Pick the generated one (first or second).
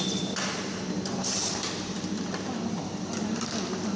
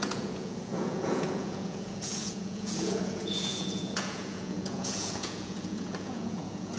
second